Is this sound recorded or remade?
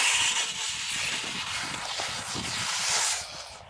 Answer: recorded